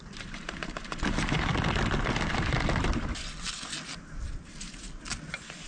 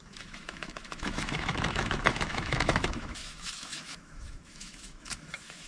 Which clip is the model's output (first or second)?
second